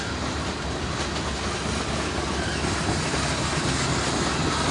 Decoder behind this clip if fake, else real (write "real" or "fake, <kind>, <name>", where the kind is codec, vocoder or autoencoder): real